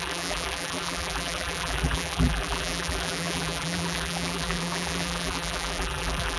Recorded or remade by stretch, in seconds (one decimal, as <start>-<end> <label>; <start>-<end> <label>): 0.0-6.4 remade